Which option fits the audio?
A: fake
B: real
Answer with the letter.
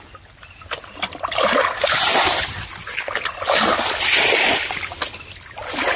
B